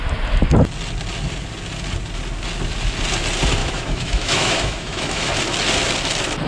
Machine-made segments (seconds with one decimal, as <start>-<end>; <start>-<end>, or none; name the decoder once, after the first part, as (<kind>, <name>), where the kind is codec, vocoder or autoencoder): 3.6-5.3 (autoencoder, DAC-VAE)